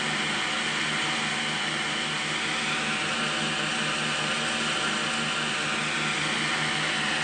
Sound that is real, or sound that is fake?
real